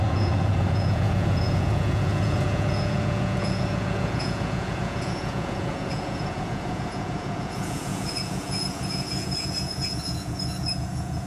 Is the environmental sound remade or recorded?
remade